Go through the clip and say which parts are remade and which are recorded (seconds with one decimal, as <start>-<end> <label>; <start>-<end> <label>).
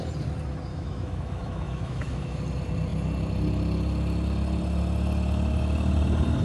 0.0-0.7 recorded; 0.7-2.4 remade; 2.4-6.4 recorded